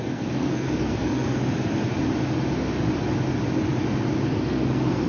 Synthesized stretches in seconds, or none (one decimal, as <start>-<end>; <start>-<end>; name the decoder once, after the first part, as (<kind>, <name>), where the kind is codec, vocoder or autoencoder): 0.0-1.4 (codec, SNAC); 4.5-5.1